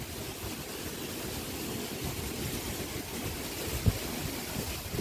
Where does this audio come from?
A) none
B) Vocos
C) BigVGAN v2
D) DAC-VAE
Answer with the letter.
A